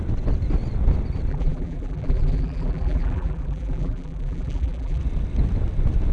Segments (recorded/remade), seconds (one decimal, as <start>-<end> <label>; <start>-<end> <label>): 0.0-1.3 recorded; 1.3-5.0 remade; 5.0-6.1 recorded